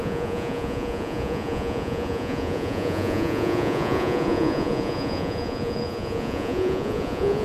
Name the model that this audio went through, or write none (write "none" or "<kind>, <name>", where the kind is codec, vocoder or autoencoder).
vocoder, Vocos